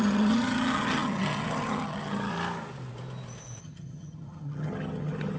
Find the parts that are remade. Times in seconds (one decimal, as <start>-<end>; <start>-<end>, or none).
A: 0.0-2.3; 3.6-5.4